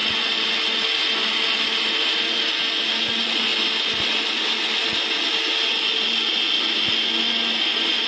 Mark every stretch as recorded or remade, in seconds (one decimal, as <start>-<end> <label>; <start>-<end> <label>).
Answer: 0.0-8.1 recorded